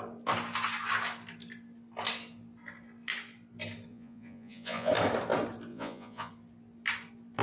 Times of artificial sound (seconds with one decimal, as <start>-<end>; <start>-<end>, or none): 3.9-4.9; 5.7-6.3